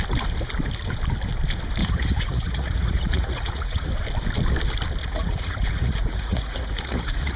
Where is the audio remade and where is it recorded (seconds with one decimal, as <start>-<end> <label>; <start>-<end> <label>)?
0.0-1.8 recorded; 1.8-3.9 remade; 3.9-5.0 recorded; 5.0-7.4 remade